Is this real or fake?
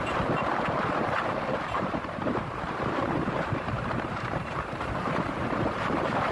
fake